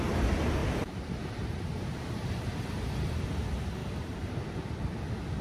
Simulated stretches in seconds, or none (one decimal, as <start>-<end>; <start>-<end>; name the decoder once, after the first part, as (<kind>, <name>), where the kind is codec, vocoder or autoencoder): 0.6-3.3 (vocoder, BigVGAN v2); 3.8-4.6